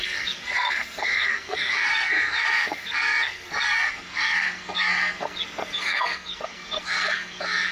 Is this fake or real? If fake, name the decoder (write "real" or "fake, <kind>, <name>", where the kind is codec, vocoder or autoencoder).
fake, codec, SNAC